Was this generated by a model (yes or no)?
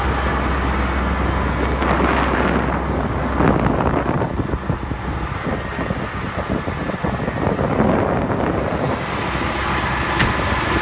no